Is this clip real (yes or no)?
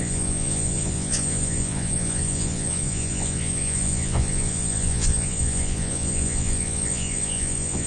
no